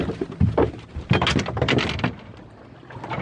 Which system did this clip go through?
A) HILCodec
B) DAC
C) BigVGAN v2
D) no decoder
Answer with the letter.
D